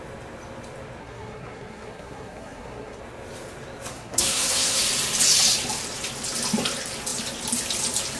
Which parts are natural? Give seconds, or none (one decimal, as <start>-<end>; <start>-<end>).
0.0-1.0; 3.0-3.9; 4.8-8.2